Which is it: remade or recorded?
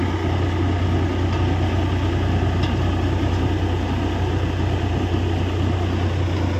recorded